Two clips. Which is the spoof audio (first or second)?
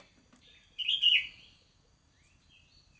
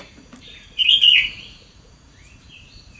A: second